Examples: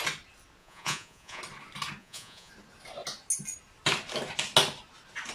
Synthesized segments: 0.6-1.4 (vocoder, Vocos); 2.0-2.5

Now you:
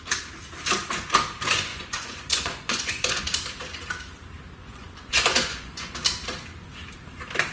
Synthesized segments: 1.7-3.2 (vocoder, Vocos); 4.6-5.9

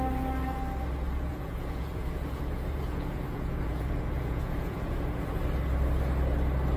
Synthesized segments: 1.3-5.4 (vocoder, Vocos)

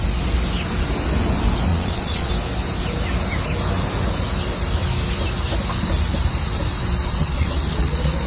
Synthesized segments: 1.7-2.3 (vocoder, Vocos); 7.1-8.3

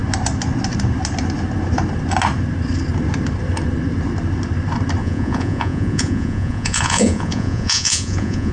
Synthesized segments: 5.0-8.5 (vocoder, Vocos)